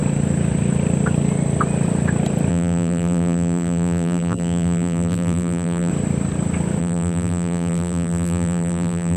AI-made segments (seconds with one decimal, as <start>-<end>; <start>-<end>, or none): 2.5-5.9; 6.8-9.2

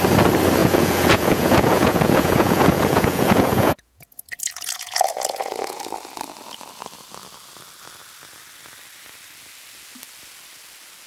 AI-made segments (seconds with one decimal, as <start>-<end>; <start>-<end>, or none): 0.6-5.8

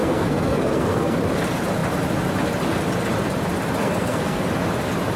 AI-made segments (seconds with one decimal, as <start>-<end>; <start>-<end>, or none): 0.0-1.2; 3.8-4.4

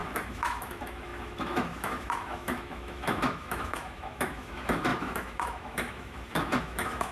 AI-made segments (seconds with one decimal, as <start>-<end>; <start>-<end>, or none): 0.0-7.1